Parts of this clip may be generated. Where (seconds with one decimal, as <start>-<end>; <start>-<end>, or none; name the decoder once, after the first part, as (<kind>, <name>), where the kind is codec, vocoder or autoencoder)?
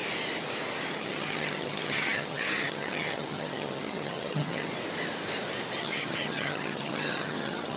0.9-4.7 (vocoder, HiFi-GAN); 5.8-7.8